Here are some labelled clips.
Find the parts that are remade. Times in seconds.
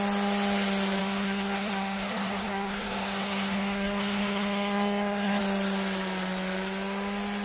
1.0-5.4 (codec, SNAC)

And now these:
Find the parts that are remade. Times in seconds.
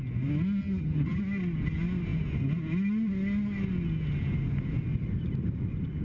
0.6-1.2 (vocoder, HiFi-GAN)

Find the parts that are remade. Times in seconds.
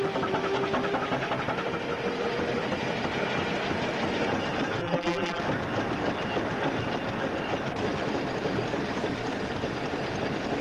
4.8-5.4 (vocoder, BigVGAN v2)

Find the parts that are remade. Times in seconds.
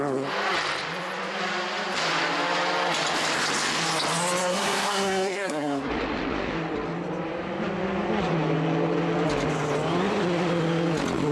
4.4-5.9 (codec, SNAC)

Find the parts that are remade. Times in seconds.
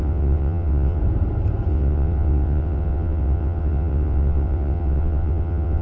0.0-1.0 (vocoder, WaveNeXt); 1.7-5.8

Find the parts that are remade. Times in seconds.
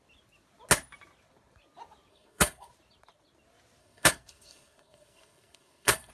2.1-2.7 (codec, SNAC); 3.8-6.1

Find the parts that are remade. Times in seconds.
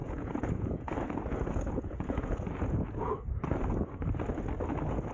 0.0-3.1 (vocoder, Vocos)